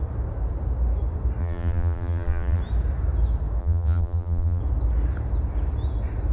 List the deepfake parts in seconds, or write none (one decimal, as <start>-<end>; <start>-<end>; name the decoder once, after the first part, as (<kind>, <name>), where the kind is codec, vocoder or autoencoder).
1.4-2.6 (vocoder, BigVGAN v2); 3.6-4.6